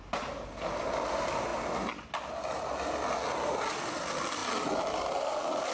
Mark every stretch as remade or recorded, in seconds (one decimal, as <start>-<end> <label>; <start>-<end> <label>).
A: 0.0-5.7 recorded